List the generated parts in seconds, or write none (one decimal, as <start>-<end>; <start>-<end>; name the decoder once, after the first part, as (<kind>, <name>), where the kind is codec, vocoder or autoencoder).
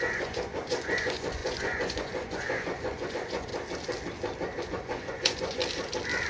0.0-3.5 (vocoder, Vocos); 4.6-5.6